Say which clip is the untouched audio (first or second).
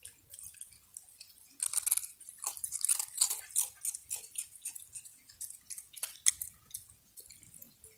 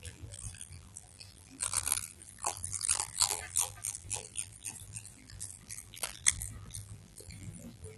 first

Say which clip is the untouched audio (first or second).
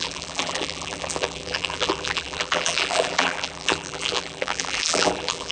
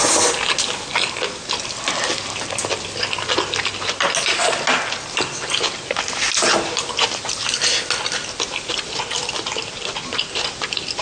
second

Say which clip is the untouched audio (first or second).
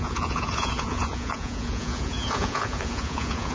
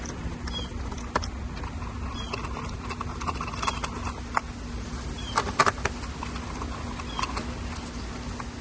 second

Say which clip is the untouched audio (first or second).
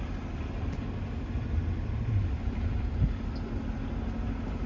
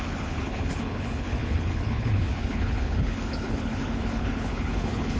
first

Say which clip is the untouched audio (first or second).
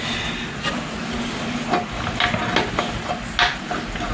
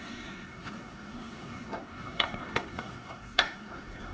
first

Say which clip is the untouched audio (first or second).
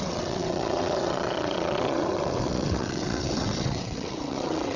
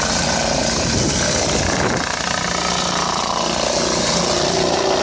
second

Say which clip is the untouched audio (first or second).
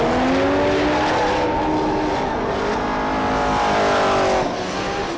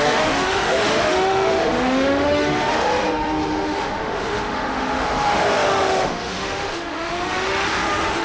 first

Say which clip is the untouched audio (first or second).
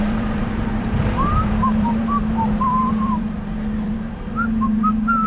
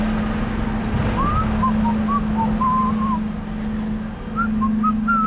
second